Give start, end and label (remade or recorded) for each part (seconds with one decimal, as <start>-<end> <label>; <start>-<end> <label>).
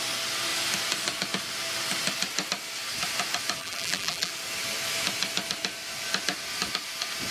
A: 0.0-3.6 recorded; 3.6-4.3 remade; 4.3-7.3 recorded